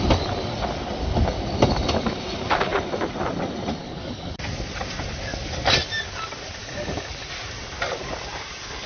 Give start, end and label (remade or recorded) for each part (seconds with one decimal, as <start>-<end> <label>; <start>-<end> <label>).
0.0-3.8 recorded; 3.8-4.4 remade; 4.4-6.6 recorded; 6.6-7.1 remade; 7.1-8.9 recorded